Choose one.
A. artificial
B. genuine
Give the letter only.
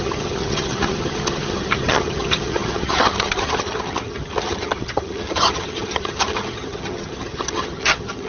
A